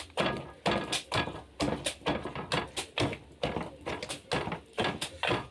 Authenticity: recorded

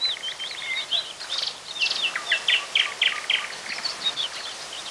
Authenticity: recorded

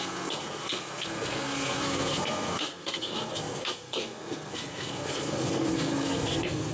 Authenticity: remade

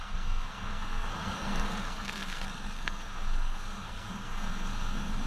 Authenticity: remade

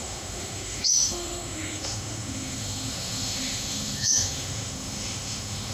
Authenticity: remade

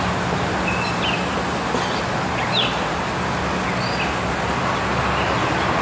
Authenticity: recorded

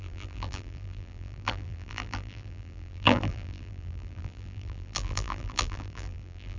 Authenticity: remade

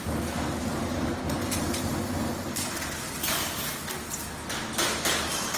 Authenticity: recorded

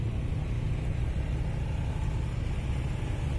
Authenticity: recorded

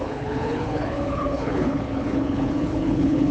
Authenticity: remade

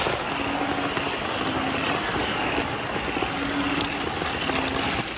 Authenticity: recorded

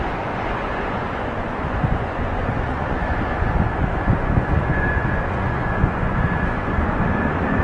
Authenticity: remade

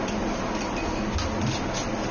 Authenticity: recorded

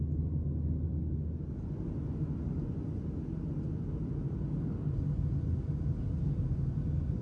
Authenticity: recorded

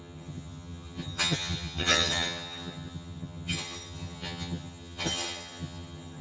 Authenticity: remade